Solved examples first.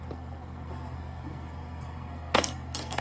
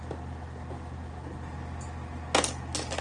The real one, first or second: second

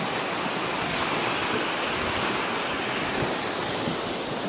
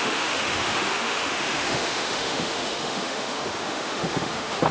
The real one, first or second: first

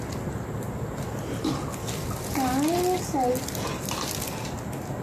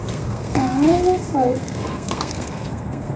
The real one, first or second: first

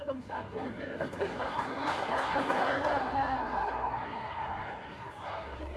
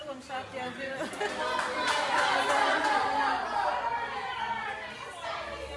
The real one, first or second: second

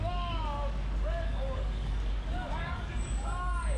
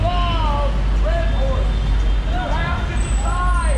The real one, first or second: second